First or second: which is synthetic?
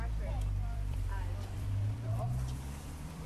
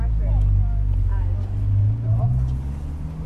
first